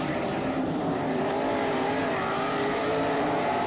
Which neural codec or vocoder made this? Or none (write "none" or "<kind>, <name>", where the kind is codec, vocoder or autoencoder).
vocoder, BigVGAN v2